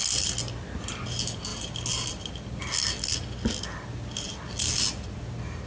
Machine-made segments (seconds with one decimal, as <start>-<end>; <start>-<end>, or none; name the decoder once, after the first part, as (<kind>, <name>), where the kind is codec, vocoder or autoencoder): none